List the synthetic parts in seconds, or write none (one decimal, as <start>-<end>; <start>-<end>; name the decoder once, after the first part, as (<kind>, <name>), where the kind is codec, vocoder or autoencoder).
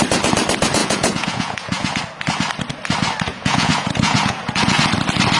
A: 0.8-2.0 (vocoder, Vocos); 3.3-4.8